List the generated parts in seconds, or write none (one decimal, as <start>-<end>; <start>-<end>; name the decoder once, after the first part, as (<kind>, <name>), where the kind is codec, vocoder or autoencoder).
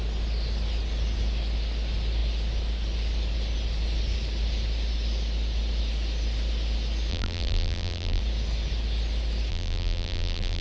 7.1-8.2 (vocoder, BigVGAN v2); 9.5-10.6